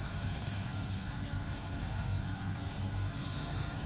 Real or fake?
fake